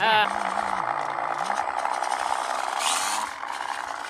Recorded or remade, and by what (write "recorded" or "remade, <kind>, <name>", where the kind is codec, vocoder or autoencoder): recorded